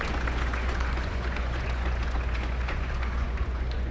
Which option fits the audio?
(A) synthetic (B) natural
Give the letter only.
A